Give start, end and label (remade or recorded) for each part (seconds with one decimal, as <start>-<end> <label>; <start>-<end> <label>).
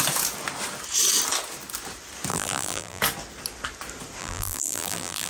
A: 0.0-2.3 recorded; 2.3-3.0 remade; 3.0-4.2 recorded; 4.2-5.3 remade